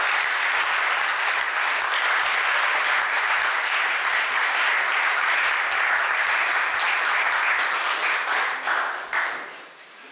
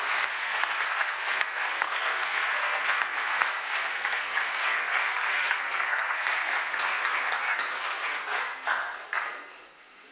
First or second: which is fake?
second